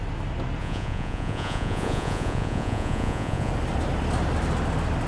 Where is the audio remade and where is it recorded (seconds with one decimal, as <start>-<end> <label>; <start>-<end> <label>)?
0.0-0.6 recorded; 0.6-3.5 remade; 3.5-5.1 recorded